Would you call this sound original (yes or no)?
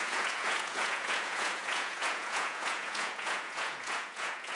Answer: no